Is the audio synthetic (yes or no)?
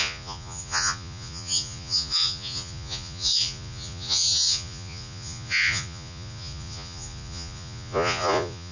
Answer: yes